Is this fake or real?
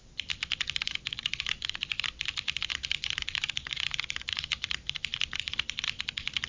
real